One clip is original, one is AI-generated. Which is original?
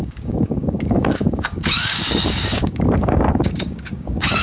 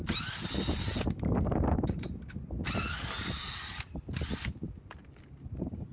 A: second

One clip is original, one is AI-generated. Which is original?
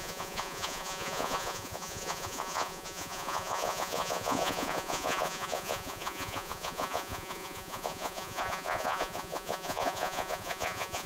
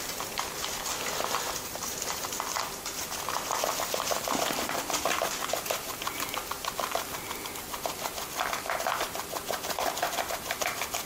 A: second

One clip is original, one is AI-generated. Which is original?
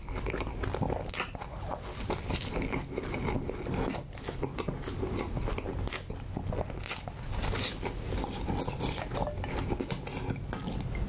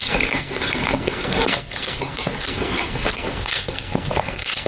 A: first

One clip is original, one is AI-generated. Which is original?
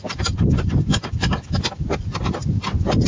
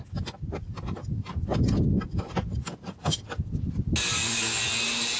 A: second